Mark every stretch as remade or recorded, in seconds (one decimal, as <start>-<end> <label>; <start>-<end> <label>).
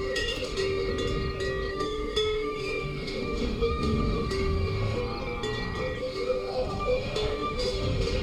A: 0.0-0.9 remade; 0.9-1.7 recorded; 1.7-5.0 remade; 5.0-6.0 recorded; 6.0-8.2 remade